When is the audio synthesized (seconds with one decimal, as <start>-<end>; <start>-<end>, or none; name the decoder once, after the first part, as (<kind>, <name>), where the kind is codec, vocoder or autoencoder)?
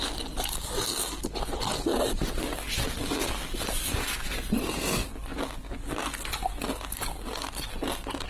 none